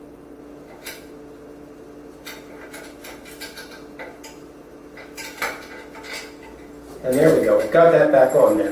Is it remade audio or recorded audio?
recorded